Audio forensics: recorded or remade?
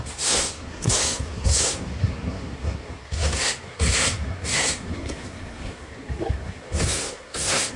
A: remade